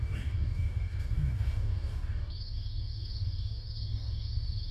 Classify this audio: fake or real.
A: fake